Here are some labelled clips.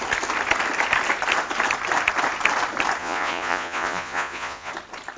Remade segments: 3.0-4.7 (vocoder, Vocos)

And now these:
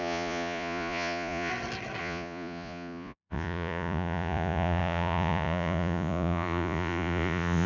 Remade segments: 0.0-1.5 (vocoder, Vocos); 2.0-7.7

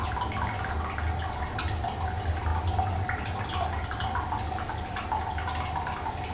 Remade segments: none

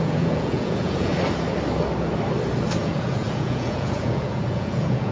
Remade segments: 0.0-1.1 (vocoder, Vocos); 2.8-5.1

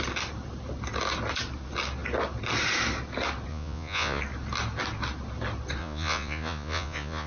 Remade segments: 3.5-4.2 (vocoder, Vocos); 5.8-7.3